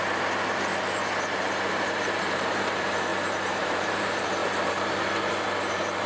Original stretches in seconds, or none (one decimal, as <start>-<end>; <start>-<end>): 0.7-1.3